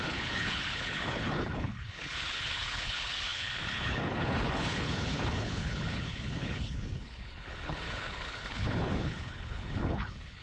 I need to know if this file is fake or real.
fake